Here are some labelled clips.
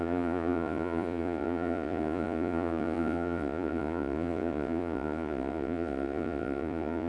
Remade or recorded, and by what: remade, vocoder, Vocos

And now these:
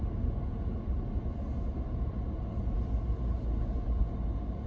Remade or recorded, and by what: recorded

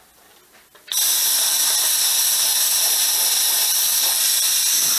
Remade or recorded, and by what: recorded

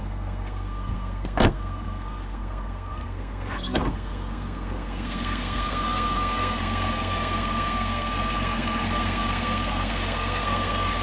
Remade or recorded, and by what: remade, codec, SNAC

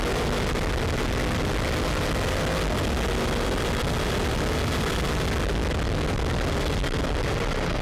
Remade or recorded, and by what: recorded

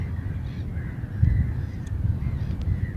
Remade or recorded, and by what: recorded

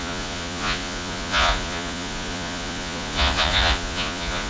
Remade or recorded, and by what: remade, vocoder, Vocos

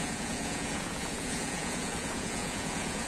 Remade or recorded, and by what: remade, vocoder, Vocos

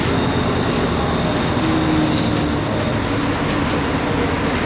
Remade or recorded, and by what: recorded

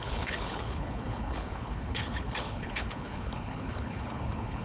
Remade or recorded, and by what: remade, codec, HILCodec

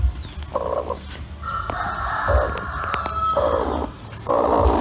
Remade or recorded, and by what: recorded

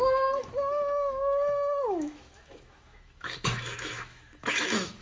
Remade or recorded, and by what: remade, autoencoder, DAC-VAE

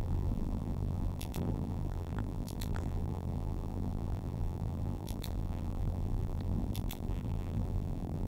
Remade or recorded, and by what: remade, vocoder, BigVGAN v2